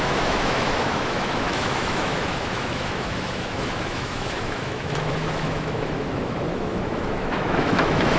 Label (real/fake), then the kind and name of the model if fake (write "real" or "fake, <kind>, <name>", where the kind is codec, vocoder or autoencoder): fake, autoencoder, DAC-VAE